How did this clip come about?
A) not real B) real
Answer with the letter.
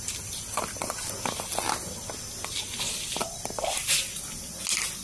B